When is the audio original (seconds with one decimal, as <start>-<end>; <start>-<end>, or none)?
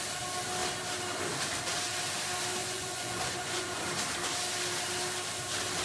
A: 0.0-2.6; 3.8-5.8